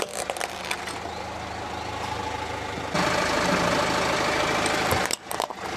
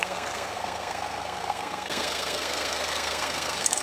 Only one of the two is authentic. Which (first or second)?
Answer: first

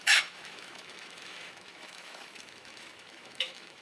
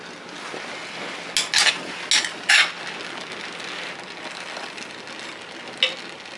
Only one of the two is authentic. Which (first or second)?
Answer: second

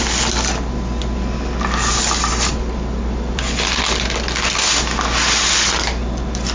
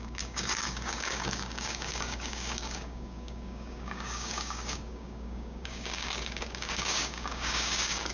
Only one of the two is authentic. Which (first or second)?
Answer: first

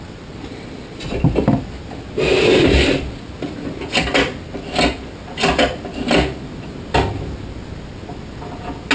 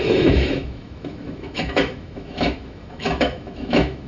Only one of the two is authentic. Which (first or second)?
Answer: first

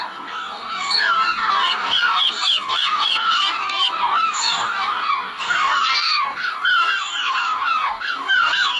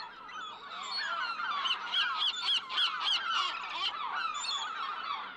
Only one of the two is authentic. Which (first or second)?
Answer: second